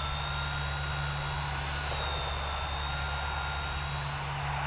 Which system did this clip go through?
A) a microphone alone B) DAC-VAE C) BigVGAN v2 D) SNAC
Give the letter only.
A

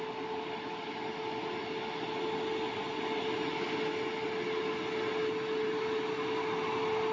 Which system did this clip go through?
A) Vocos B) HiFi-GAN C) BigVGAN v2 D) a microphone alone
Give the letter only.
D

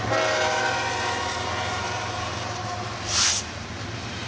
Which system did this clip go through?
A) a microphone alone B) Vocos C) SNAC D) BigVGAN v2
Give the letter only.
D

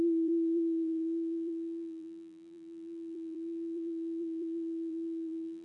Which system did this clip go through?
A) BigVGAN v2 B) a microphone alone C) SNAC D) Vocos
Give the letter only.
A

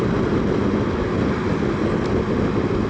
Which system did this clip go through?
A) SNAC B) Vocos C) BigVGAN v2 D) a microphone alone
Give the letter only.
D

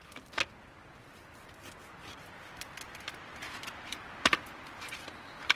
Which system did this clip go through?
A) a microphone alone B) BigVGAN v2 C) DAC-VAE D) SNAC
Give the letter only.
A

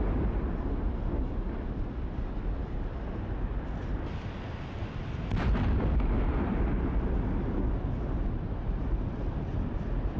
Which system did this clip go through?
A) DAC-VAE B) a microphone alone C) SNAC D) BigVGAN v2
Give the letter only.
B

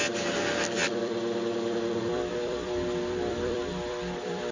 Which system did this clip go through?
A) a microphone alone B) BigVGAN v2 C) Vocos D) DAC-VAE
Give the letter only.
B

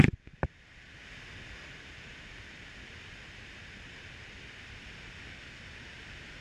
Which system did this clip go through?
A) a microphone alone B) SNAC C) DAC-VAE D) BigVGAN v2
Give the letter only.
D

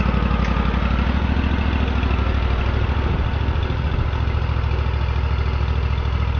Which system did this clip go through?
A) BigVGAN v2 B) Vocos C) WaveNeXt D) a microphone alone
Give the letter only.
D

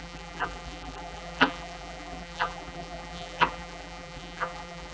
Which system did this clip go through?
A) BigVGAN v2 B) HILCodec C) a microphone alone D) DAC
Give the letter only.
A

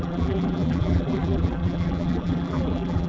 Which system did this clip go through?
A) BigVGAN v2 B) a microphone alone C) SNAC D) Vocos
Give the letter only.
A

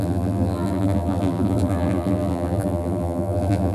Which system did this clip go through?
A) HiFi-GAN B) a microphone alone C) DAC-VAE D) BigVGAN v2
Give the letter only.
D